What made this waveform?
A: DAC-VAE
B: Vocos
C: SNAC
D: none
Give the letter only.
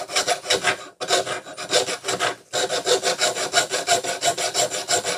D